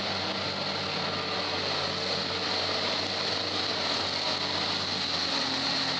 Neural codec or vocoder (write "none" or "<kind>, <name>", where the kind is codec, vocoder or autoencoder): none